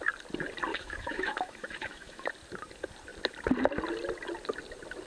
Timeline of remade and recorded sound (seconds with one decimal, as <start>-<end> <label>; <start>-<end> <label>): 0.0-0.7 recorded; 0.7-2.3 remade; 2.3-5.1 recorded